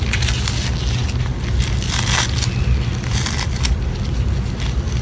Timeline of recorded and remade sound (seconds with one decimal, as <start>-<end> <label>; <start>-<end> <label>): 0.0-5.0 recorded